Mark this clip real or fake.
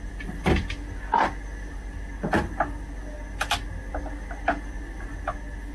real